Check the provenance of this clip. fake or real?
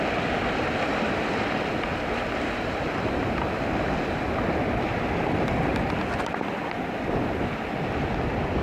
real